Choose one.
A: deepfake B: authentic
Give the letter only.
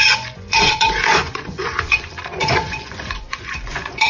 A